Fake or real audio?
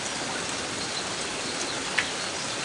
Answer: real